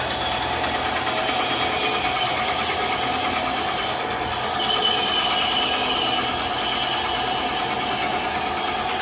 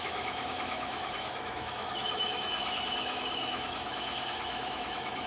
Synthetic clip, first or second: second